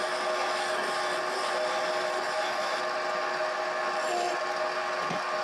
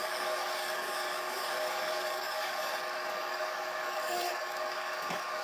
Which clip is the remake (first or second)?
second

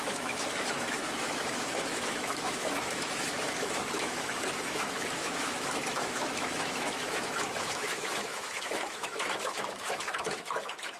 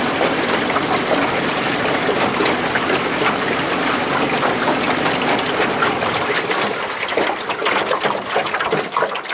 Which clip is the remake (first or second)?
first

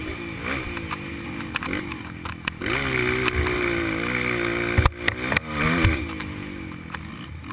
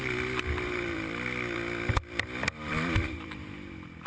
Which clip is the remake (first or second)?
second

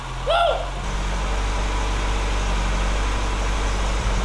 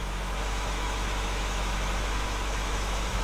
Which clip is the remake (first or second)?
second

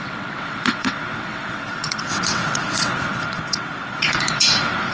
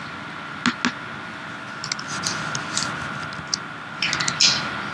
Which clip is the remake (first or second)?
first